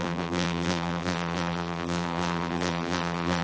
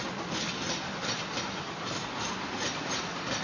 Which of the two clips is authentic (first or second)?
second